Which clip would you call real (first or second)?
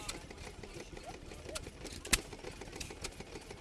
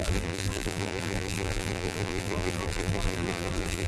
first